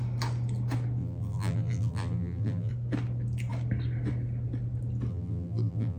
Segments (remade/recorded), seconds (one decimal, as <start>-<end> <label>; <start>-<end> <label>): 0.0-1.0 recorded; 1.0-2.7 remade; 2.7-5.1 recorded; 5.1-6.0 remade